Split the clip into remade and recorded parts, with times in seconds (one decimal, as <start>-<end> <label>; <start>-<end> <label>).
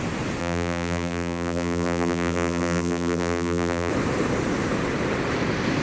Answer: 0.0-0.4 recorded; 0.4-3.9 remade; 3.9-5.8 recorded